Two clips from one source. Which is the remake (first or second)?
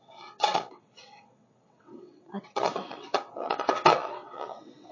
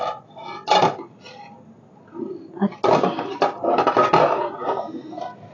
first